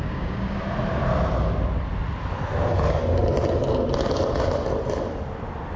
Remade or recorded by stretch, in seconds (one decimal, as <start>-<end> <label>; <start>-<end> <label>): 0.0-0.6 remade; 0.6-5.8 recorded